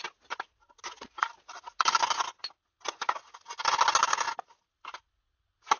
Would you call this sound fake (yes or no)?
no